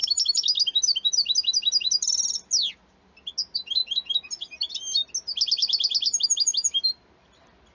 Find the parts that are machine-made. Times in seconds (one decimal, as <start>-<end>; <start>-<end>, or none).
none